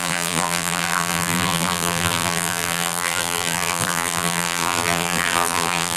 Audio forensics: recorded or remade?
remade